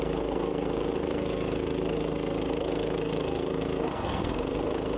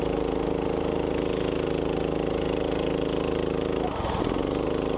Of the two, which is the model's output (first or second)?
first